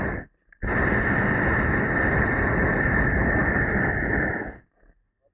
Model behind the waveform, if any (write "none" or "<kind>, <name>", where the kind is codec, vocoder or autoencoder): none